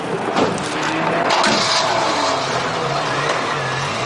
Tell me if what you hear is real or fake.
real